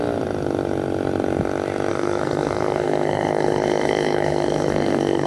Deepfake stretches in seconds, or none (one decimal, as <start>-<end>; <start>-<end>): 1.9-5.3